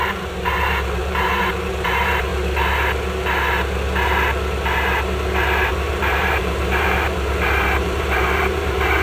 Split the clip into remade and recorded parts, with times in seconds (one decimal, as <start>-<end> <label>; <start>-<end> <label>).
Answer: 0.0-2.3 remade; 2.3-5.7 recorded; 5.7-9.0 remade